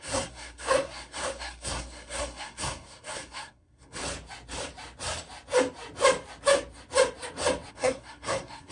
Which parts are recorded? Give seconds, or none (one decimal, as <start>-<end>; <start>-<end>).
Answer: 4.0-7.7